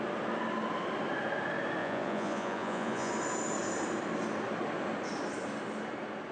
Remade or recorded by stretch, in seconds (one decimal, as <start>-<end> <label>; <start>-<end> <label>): 0.0-1.8 recorded; 1.8-3.1 remade; 3.1-6.3 recorded